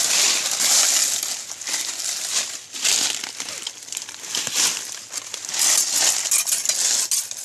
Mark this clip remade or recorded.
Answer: recorded